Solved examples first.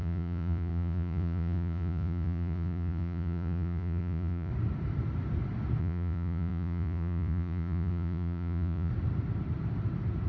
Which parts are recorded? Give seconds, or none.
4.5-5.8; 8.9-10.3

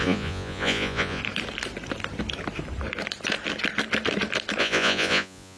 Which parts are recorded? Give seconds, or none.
1.2-4.6